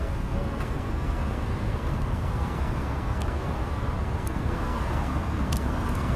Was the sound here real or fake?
fake